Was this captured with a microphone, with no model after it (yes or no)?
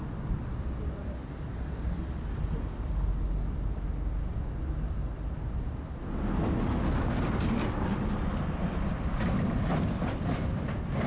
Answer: yes